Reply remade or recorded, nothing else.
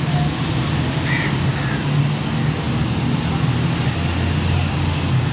recorded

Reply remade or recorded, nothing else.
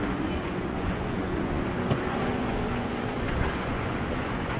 remade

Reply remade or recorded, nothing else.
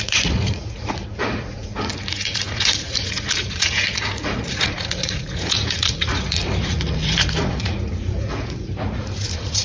remade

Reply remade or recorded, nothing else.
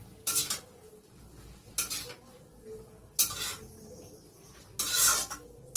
recorded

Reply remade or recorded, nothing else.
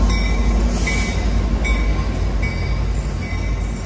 recorded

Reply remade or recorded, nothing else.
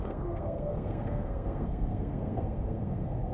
remade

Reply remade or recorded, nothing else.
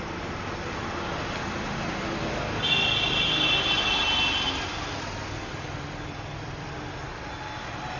recorded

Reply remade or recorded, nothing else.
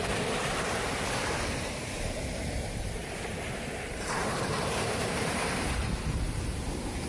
remade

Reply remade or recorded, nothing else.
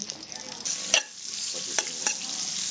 recorded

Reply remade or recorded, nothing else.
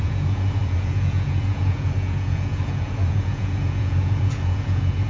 remade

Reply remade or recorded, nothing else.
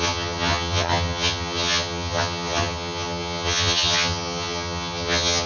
remade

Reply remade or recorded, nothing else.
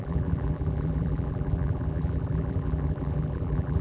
remade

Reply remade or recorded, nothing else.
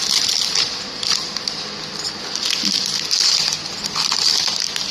recorded